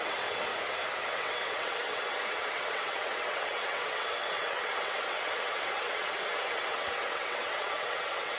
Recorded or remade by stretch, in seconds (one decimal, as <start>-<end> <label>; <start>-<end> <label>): 0.0-0.5 remade; 0.5-1.0 recorded; 1.0-8.4 remade